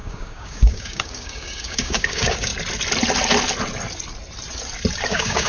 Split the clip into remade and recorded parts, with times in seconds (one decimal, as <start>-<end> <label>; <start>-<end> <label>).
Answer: 0.0-2.5 remade; 2.5-5.1 recorded; 5.1-5.5 remade